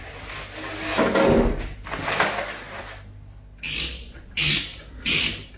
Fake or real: real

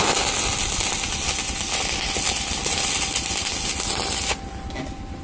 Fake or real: real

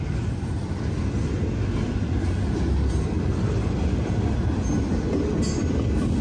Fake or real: real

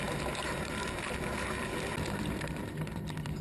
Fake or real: real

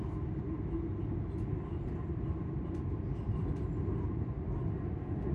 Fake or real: real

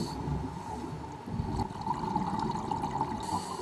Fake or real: real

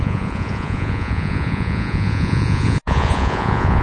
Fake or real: fake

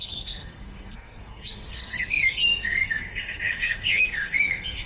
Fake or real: fake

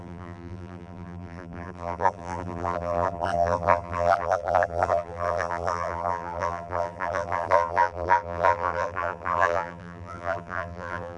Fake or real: fake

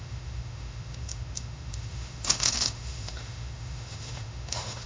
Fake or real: fake